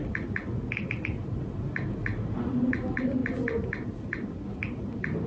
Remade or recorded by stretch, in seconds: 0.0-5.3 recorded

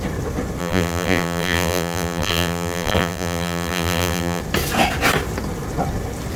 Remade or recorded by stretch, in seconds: 0.0-0.6 recorded; 0.6-4.4 remade; 4.4-6.4 recorded

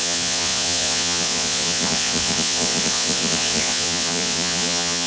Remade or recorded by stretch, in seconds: 0.0-5.1 remade

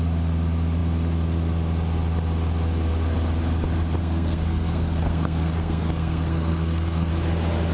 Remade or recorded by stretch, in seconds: 0.0-4.0 recorded; 4.0-7.1 remade; 7.1-7.7 recorded

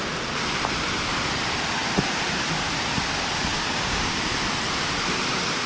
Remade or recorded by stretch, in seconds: 0.0-3.5 recorded; 3.5-4.3 remade; 4.3-5.7 recorded

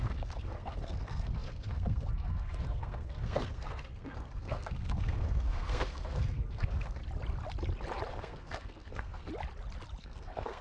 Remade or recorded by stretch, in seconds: 0.0-7.0 remade; 7.0-8.1 recorded; 8.1-9.3 remade; 9.3-10.0 recorded; 10.0-10.6 remade